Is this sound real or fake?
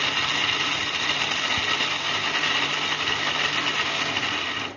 real